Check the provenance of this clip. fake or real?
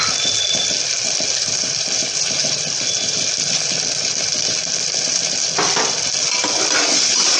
real